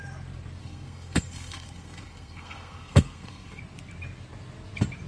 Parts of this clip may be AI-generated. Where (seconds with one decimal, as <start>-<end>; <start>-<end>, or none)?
0.6-3.6